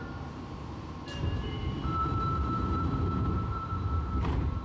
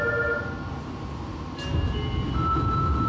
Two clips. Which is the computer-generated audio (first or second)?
first